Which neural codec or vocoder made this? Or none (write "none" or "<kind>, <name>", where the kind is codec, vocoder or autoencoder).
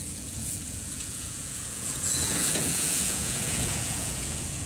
vocoder, Vocos